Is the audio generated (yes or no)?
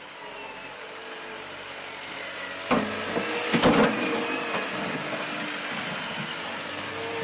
no